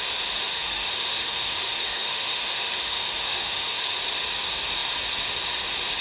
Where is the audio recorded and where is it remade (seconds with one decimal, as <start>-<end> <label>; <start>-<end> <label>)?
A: 0.0-0.4 recorded; 0.4-4.0 remade; 4.0-6.0 recorded